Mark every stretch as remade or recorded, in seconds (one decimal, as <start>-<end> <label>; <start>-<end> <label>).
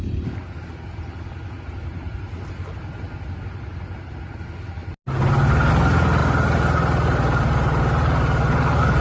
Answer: 0.0-9.0 recorded